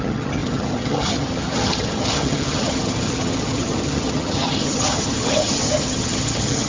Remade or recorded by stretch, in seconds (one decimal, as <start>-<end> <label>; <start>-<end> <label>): 0.0-6.7 remade